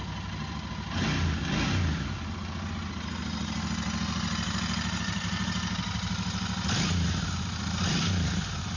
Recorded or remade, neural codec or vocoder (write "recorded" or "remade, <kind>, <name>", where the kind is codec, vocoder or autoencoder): recorded